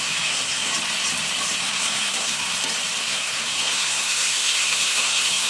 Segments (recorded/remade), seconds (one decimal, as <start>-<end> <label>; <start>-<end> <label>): 0.0-0.7 remade; 0.7-1.6 recorded; 1.6-2.5 remade; 2.5-3.0 recorded; 3.0-5.5 remade